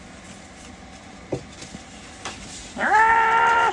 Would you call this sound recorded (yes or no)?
yes